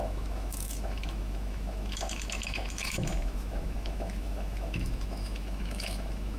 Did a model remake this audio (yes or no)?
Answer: yes